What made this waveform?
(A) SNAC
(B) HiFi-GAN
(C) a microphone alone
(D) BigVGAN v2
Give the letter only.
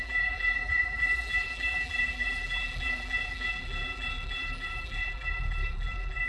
D